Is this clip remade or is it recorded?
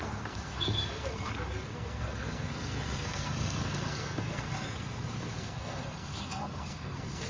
remade